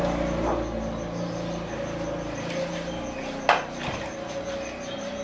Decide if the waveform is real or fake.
real